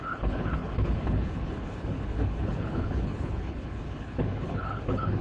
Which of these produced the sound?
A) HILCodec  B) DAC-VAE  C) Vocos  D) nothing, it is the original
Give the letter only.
A